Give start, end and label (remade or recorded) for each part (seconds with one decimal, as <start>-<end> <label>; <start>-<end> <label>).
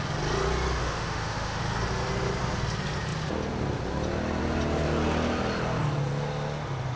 0.0-0.8 recorded; 0.8-1.6 remade; 1.6-7.0 recorded